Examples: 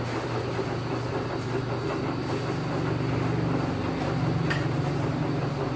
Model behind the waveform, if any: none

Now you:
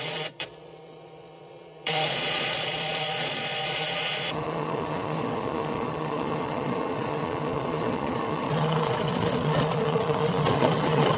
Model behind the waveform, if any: vocoder, Vocos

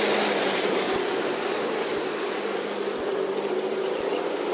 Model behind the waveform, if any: none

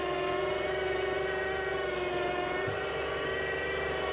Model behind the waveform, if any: none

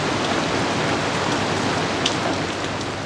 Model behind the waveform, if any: none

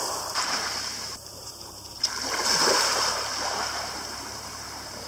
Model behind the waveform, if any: vocoder, BigVGAN v2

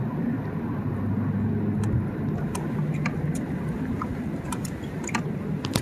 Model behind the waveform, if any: none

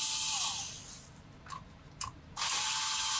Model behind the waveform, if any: none